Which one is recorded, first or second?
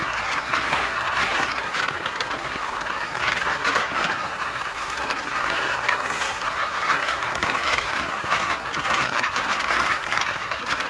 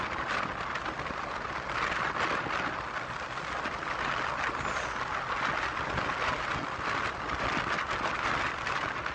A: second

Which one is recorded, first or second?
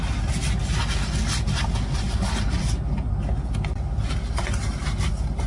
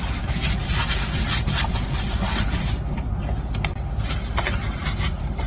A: first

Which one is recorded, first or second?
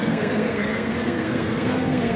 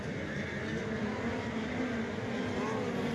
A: second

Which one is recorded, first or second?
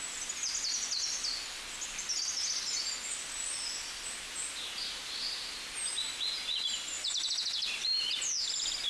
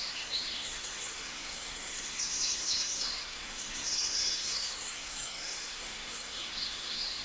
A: first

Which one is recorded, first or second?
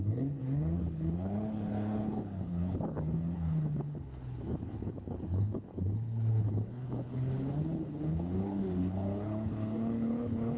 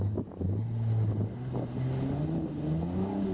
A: second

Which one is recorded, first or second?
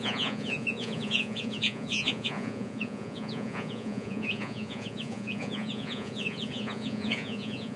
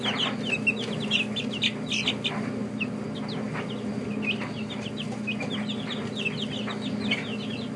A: second